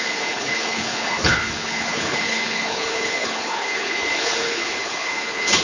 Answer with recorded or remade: remade